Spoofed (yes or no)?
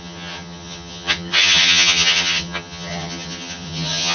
yes